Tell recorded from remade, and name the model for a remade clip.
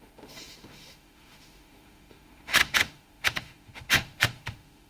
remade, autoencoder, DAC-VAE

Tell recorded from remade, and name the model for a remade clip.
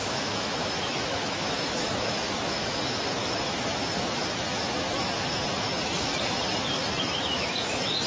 remade, autoencoder, DAC-VAE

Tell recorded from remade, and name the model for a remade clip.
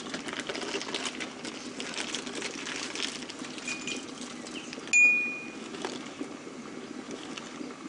recorded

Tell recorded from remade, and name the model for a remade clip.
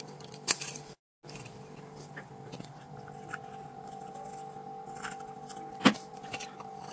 recorded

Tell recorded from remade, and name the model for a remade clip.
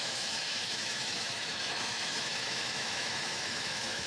remade, autoencoder, DAC-VAE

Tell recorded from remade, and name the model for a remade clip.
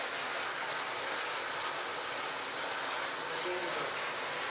recorded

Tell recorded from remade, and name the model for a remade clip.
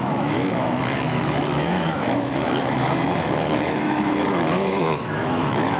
remade, autoencoder, DAC-VAE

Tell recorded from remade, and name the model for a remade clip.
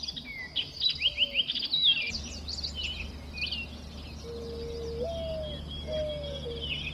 recorded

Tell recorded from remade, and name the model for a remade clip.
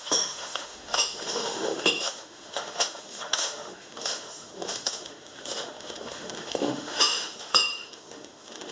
remade, autoencoder, DAC-VAE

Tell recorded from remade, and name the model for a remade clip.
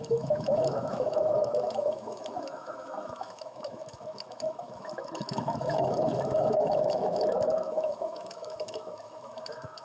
remade, autoencoder, DAC-VAE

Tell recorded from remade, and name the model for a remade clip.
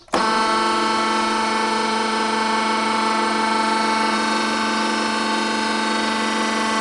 recorded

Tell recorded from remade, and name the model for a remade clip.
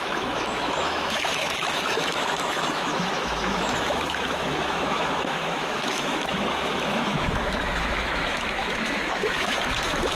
remade, autoencoder, DAC-VAE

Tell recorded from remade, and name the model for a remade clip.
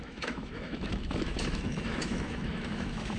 remade, autoencoder, DAC-VAE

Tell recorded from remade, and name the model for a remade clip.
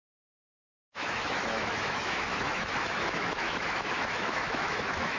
remade, autoencoder, DAC-VAE